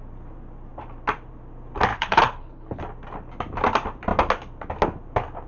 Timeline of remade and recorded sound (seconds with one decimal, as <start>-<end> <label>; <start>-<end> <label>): 0.0-1.9 recorded; 1.9-2.8 remade; 2.8-5.5 recorded